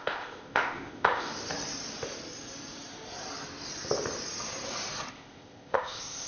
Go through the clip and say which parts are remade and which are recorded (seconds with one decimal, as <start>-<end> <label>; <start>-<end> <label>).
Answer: 0.0-1.3 remade; 1.3-5.1 recorded; 5.1-6.3 remade